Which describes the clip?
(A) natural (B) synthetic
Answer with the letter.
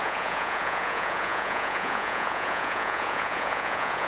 B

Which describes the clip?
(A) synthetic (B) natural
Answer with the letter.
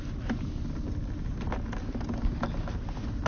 B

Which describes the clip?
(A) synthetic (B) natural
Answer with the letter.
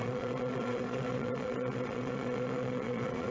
A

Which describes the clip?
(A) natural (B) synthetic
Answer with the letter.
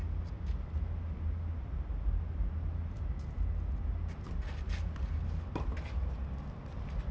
A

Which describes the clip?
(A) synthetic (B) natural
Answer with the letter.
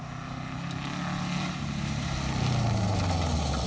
B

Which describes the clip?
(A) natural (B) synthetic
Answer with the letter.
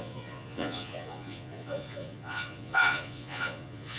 B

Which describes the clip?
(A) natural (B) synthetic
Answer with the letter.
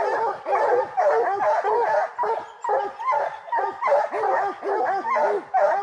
A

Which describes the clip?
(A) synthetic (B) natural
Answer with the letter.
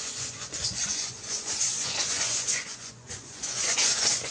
A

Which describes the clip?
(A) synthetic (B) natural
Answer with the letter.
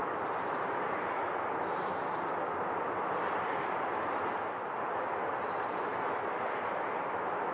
B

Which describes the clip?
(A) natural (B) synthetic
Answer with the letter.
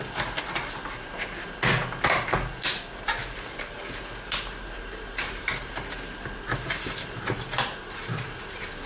A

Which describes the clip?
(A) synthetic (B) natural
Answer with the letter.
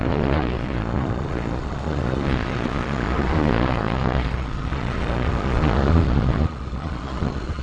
A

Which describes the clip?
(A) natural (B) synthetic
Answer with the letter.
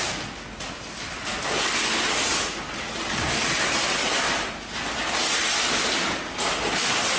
A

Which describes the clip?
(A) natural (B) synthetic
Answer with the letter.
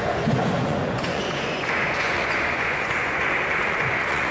B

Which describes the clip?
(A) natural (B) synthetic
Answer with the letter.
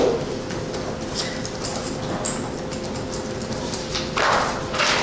A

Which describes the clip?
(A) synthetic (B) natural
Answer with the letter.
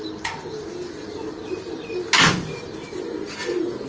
B